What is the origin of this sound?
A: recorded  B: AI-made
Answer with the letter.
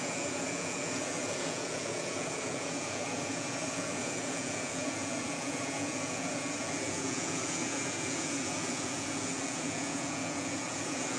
B